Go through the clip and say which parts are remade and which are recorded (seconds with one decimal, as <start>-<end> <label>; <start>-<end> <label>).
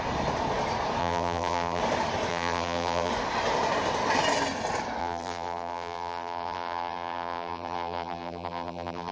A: 0.0-1.0 recorded; 1.0-1.8 remade; 1.8-2.3 recorded; 2.3-3.1 remade; 3.1-5.0 recorded; 5.0-9.1 remade